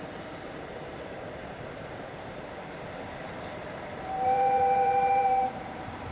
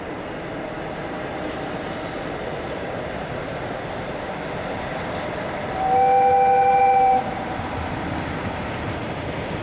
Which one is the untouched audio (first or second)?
second